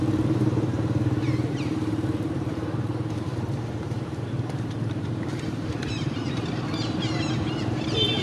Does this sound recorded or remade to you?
remade